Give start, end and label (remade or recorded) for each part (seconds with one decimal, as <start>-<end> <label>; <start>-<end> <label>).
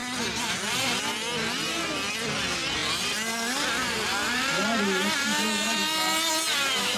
0.0-7.0 recorded